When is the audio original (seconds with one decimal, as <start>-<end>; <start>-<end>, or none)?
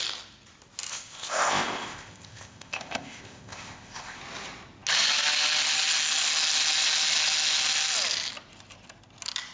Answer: 0.0-0.9; 4.2-9.5